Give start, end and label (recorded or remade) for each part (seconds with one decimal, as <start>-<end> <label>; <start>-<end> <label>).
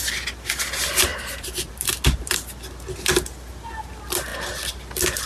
0.0-1.1 recorded; 1.1-1.7 remade; 1.7-5.3 recorded